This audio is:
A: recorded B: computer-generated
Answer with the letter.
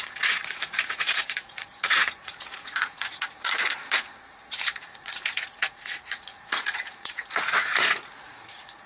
B